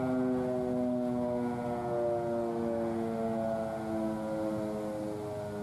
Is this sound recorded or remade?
recorded